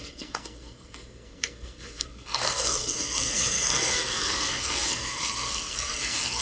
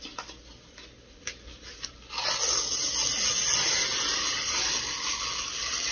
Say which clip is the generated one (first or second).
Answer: first